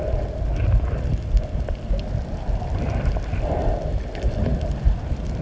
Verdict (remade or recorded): recorded